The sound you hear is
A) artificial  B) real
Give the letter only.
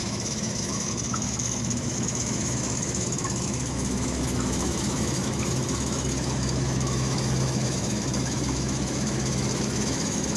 A